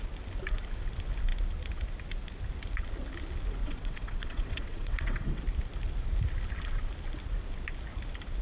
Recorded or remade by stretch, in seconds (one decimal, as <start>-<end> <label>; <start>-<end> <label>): 0.0-3.6 recorded; 3.6-5.4 remade; 5.4-8.4 recorded